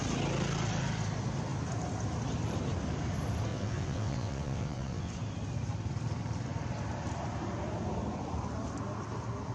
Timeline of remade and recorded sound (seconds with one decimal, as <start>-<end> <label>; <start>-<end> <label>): 0.0-3.5 recorded; 3.5-5.1 remade; 5.1-9.5 recorded